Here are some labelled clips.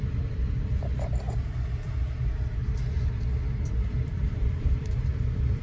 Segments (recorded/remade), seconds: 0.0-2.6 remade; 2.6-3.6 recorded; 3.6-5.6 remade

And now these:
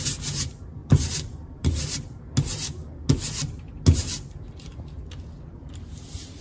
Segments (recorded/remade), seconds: 0.0-0.8 recorded; 0.8-2.2 remade; 2.2-6.4 recorded